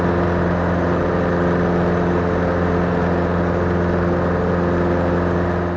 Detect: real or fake real